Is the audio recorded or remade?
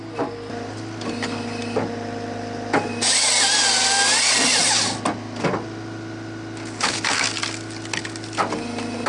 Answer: recorded